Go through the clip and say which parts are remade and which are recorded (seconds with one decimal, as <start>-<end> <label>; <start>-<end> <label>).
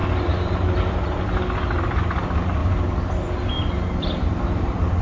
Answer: 0.0-2.6 remade; 2.6-3.5 recorded; 3.5-5.0 remade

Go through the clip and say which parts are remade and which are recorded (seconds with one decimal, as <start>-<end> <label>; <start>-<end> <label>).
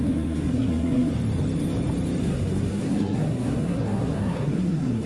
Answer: 0.0-1.1 remade; 1.1-2.2 recorded; 2.2-5.1 remade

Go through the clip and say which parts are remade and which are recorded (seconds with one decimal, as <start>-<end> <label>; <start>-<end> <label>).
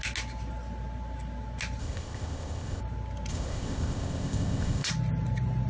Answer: 0.0-1.8 recorded; 1.8-2.8 remade; 2.8-3.3 recorded; 3.3-4.9 remade; 4.9-5.7 recorded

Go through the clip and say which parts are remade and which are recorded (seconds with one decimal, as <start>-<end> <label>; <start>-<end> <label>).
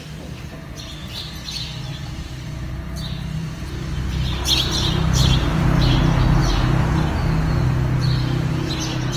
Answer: 0.0-1.9 recorded; 1.9-4.0 remade; 4.0-5.2 recorded; 5.2-6.0 remade; 6.0-6.4 recorded; 6.4-7.1 remade; 7.1-9.2 recorded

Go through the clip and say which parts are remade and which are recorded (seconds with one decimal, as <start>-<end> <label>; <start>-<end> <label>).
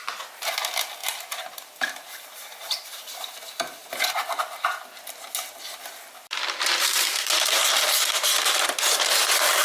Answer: 0.0-1.0 recorded; 1.0-3.0 remade; 3.0-5.8 recorded; 5.8-7.6 remade; 7.6-9.6 recorded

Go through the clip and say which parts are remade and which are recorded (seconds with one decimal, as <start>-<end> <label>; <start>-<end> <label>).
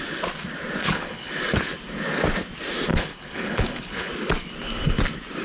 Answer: 0.0-0.8 recorded; 0.8-1.3 remade; 1.3-2.9 recorded; 2.9-4.1 remade; 4.1-5.4 recorded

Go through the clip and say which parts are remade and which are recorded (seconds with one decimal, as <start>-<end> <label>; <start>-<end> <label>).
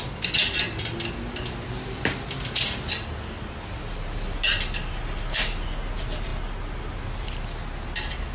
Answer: 0.0-8.3 recorded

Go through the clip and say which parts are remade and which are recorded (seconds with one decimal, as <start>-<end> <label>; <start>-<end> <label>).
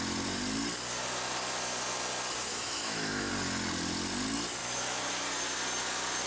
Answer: 0.0-2.5 recorded; 2.5-3.3 remade; 3.3-4.6 recorded; 4.6-5.1 remade; 5.1-6.3 recorded